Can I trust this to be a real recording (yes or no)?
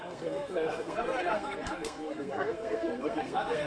no